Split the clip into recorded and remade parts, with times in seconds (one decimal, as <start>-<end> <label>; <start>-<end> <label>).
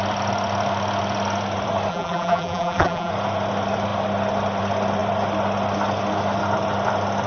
0.0-1.9 recorded; 1.9-3.1 remade; 3.1-7.3 recorded